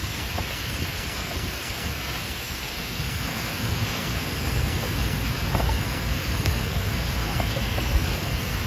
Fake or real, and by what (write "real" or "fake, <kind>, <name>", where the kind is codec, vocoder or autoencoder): fake, codec, SNAC